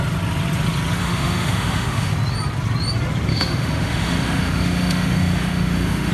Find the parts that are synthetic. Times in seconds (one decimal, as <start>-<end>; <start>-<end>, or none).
1.0-2.1; 3.3-6.1